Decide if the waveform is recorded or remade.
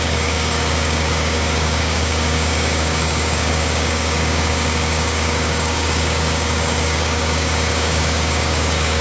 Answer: remade